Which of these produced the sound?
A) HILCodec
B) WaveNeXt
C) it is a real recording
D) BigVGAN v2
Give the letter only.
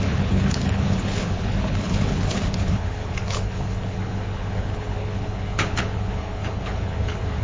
A